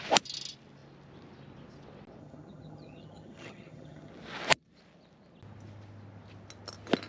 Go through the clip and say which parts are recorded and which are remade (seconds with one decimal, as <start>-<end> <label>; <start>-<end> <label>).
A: 0.0-2.2 recorded; 2.2-4.1 remade; 4.1-7.1 recorded